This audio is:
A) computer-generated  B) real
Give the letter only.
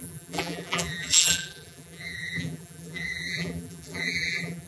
A